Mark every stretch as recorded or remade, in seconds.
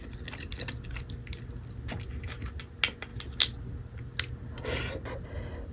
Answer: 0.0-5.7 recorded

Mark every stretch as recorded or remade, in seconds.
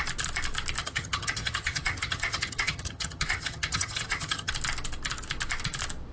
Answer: 0.0-0.8 recorded; 0.8-4.5 remade; 4.5-6.1 recorded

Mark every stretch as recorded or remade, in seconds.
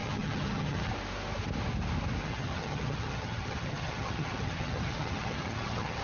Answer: 0.0-0.9 remade; 0.9-2.2 recorded; 2.2-6.0 remade